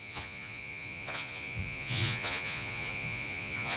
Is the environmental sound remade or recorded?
remade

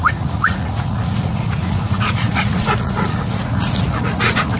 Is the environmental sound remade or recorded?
remade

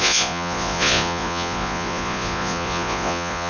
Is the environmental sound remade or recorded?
remade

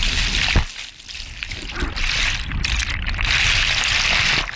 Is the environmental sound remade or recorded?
recorded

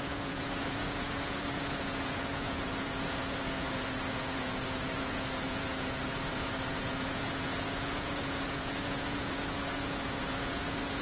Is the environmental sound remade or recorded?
remade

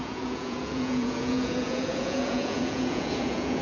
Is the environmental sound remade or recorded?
remade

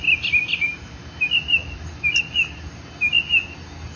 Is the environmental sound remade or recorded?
recorded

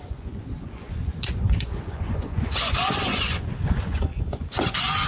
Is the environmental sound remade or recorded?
remade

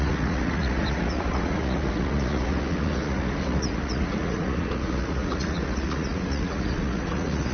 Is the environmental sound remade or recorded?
remade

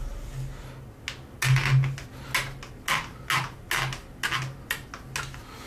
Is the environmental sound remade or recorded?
recorded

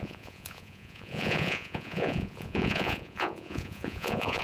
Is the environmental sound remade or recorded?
remade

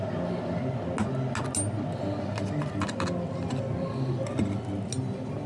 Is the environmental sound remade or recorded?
recorded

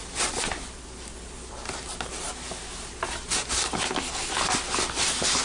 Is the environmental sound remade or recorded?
recorded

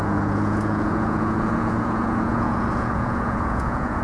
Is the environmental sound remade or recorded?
remade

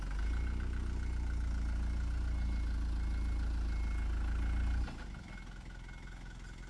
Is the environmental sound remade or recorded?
recorded